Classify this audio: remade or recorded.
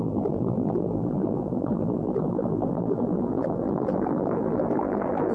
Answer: remade